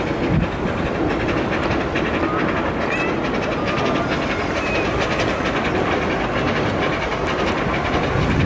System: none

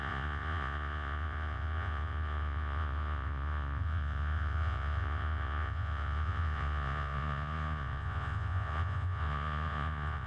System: vocoder, Vocos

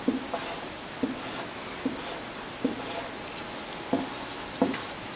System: none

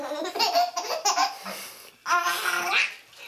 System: none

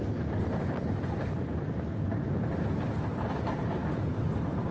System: none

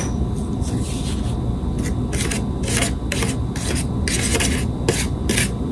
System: none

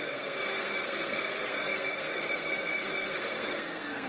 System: codec, SNAC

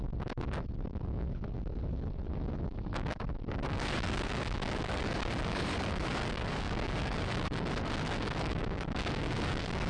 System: codec, DAC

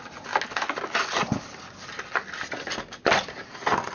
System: none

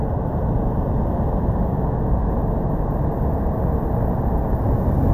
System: none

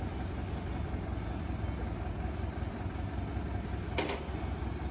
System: none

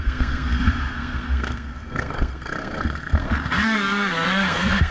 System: codec, SNAC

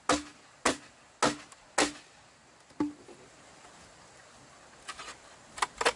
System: none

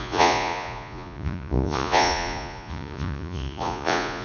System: vocoder, Vocos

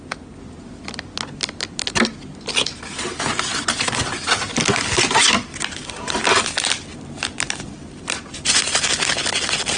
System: none